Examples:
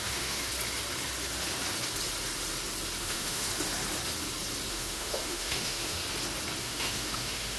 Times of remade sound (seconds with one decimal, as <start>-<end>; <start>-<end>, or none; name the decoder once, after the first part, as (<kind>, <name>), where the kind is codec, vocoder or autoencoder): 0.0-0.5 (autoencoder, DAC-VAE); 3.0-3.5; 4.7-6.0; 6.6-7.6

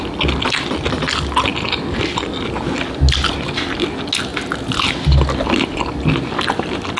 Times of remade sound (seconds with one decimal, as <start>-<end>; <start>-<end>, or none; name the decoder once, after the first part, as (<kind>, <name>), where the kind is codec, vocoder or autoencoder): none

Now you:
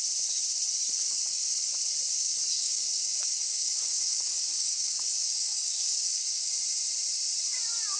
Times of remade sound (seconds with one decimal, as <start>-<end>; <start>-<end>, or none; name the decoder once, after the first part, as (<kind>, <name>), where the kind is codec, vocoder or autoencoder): 1.0-1.7 (codec, DAC); 2.1-6.5

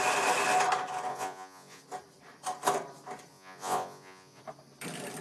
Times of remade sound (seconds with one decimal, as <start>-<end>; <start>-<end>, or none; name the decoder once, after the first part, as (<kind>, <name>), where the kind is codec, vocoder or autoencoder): 1.1-1.8 (vocoder, Vocos); 3.3-4.4